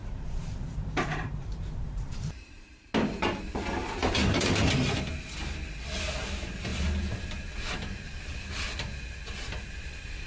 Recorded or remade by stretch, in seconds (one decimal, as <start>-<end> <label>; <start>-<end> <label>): 0.0-2.9 remade; 2.9-4.0 recorded; 4.0-4.7 remade; 4.7-10.3 recorded